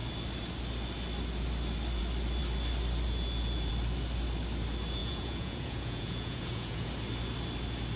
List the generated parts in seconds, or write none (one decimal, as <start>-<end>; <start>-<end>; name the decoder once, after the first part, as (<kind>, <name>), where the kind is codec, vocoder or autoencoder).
5.0-6.9 (vocoder, Vocos)